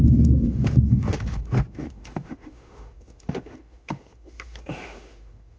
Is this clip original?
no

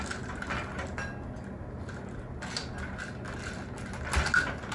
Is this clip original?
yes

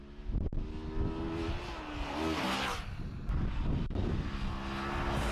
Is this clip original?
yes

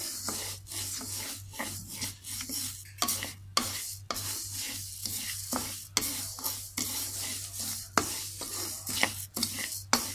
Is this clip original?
yes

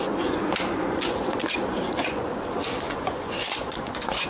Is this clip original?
no